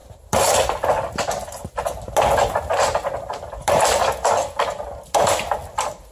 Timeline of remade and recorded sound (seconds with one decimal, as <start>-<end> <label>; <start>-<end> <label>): 0.0-6.1 recorded